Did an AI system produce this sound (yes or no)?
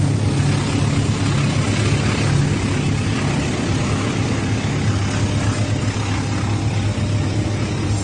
no